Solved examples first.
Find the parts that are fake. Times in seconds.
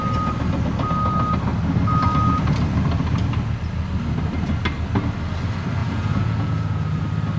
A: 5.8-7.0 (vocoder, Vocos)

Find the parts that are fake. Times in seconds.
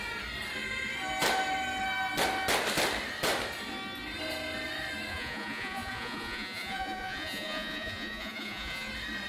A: 5.1-8.9 (vocoder, Vocos)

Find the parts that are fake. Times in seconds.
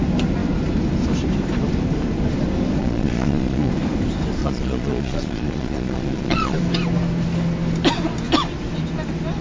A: 2.8-3.7 (vocoder, Vocos); 4.4-6.6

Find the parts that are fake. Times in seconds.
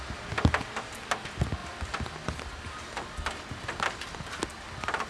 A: none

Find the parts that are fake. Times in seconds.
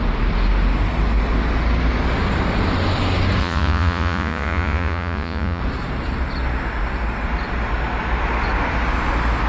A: 3.4-5.6 (vocoder, Vocos)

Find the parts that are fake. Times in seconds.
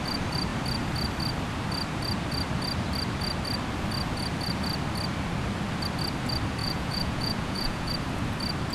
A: 6.6-7.9 (vocoder, Vocos)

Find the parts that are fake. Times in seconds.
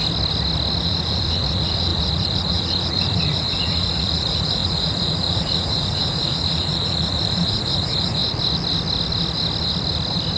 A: 0.8-8.2 (vocoder, Vocos)